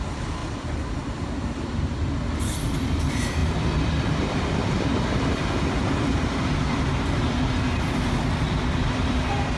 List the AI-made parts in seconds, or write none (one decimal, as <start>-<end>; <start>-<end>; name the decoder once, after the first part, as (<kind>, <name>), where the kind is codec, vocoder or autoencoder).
0.0-6.9 (vocoder, BigVGAN v2); 8.4-9.6